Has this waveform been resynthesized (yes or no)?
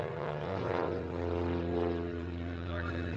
yes